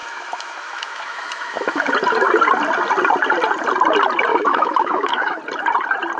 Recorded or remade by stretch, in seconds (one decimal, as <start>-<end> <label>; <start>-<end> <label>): 0.0-1.9 remade; 1.9-4.3 recorded; 4.3-5.4 remade; 5.4-6.2 recorded